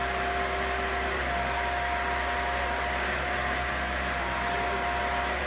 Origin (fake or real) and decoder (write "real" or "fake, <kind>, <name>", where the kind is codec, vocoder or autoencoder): real